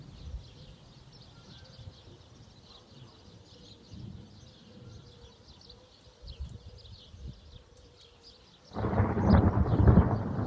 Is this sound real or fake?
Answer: real